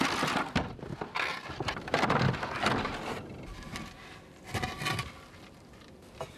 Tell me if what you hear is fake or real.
real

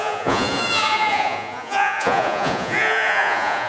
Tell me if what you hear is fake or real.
fake